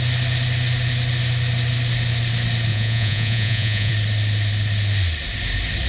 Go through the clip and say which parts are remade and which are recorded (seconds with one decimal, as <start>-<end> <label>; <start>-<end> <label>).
0.0-2.7 recorded; 2.7-3.9 remade; 3.9-5.9 recorded